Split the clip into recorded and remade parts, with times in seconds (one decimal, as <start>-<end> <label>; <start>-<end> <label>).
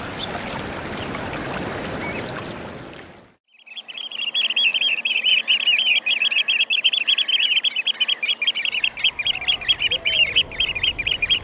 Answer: 0.0-4.7 recorded; 4.7-5.3 remade; 5.3-11.4 recorded